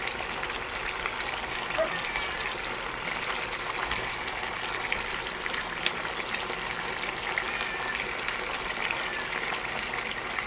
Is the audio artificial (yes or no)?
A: no